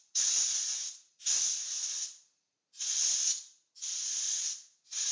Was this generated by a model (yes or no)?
yes